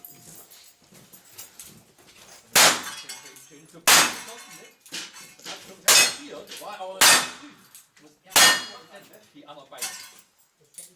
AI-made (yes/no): no